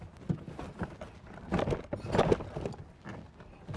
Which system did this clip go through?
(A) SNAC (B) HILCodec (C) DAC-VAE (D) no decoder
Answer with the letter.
D